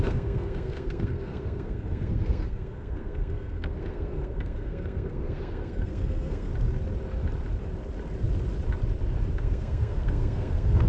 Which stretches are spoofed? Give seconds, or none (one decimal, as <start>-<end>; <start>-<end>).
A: 0.0-6.5; 9.3-10.9